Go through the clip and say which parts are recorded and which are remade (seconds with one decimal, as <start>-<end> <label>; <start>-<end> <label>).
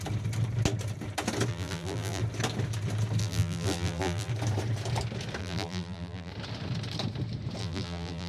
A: 0.0-1.5 recorded; 1.5-2.2 remade; 2.2-3.2 recorded; 3.2-4.3 remade; 4.3-5.4 recorded; 5.4-6.3 remade; 6.3-7.6 recorded; 7.6-8.3 remade